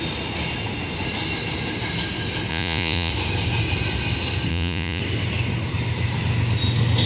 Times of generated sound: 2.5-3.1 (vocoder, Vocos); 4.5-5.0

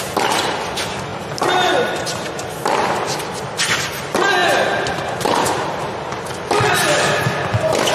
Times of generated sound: none